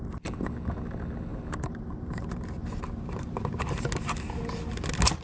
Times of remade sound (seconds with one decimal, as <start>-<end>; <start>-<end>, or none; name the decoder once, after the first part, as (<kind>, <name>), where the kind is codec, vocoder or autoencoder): 1.3-3.4 (vocoder, BigVGAN v2)